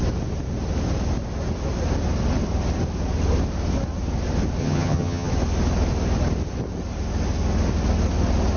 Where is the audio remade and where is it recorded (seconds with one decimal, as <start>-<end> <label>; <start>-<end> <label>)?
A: 0.0-4.6 recorded; 4.6-5.3 remade; 5.3-8.6 recorded